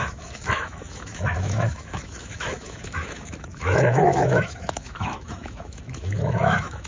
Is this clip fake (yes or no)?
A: yes